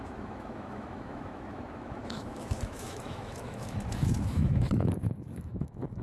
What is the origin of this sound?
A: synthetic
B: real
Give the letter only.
A